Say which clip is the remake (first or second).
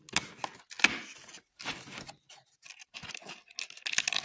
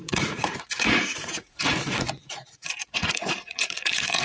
second